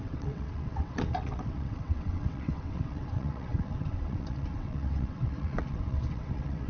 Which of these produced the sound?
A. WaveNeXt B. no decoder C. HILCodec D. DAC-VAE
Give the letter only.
A